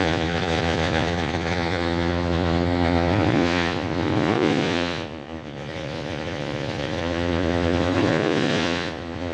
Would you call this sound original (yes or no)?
no